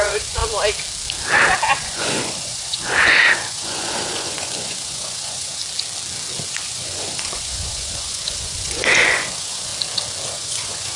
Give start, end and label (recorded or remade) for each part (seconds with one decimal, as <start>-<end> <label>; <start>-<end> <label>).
0.0-0.4 remade; 0.4-1.7 recorded; 1.7-5.6 remade; 5.6-6.4 recorded; 6.4-9.7 remade; 9.7-10.3 recorded; 10.3-11.0 remade